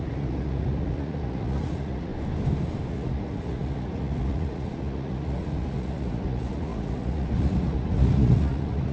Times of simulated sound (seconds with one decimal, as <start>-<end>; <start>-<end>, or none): 0.0-2.1; 2.9-8.9